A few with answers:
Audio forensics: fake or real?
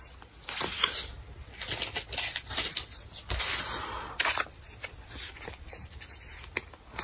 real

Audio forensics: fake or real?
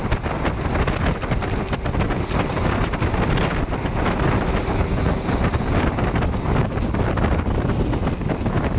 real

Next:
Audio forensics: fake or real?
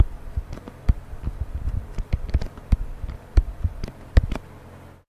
fake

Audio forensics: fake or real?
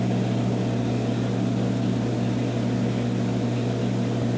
real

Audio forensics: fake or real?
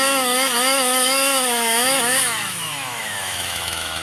fake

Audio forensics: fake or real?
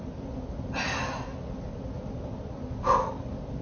real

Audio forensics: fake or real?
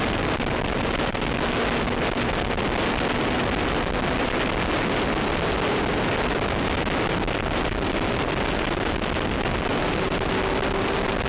real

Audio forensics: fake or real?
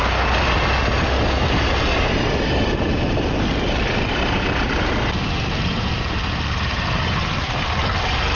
real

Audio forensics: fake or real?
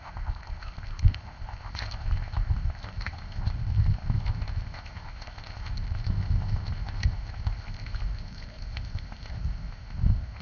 fake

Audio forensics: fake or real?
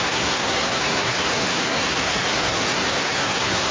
fake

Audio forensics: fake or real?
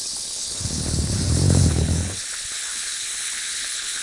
fake